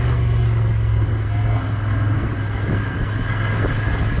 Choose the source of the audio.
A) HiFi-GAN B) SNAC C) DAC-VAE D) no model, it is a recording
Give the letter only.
B